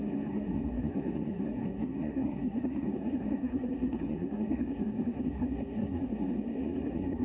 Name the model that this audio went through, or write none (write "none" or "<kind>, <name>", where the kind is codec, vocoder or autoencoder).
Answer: codec, SNAC